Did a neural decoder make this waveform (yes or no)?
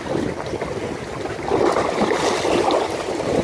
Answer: no